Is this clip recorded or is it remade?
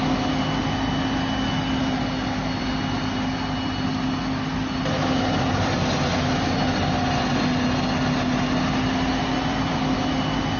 recorded